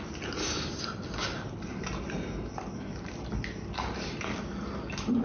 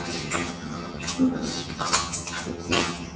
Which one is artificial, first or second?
second